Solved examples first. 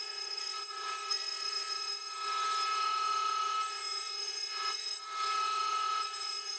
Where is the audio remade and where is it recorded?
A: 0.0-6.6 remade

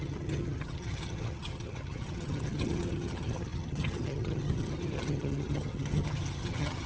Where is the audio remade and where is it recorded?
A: 0.0-6.9 remade